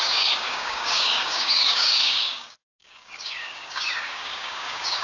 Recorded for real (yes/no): no